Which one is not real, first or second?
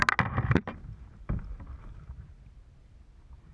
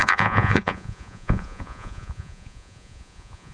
second